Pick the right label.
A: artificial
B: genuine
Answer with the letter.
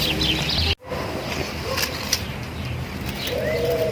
B